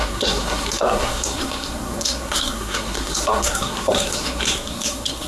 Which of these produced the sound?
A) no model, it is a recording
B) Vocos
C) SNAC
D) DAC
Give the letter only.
C